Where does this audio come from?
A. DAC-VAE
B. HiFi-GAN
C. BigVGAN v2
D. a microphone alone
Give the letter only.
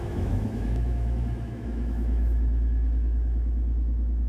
A